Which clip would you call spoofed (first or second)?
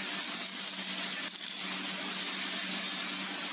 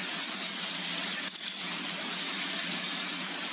second